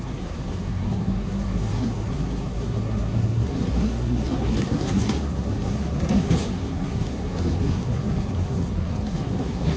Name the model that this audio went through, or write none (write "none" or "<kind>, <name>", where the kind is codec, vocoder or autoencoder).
codec, SNAC